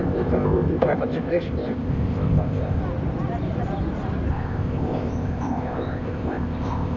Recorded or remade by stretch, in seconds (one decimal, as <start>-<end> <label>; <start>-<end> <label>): 0.0-2.8 remade; 2.8-4.3 recorded; 4.3-7.0 remade